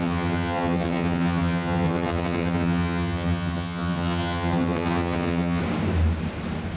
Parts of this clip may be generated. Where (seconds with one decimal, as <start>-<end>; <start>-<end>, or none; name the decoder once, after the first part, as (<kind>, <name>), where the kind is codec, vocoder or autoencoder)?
0.0-5.6 (vocoder, HiFi-GAN)